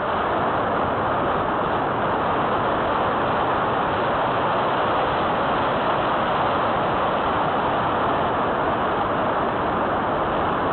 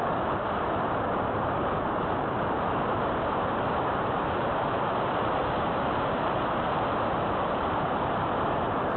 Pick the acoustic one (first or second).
first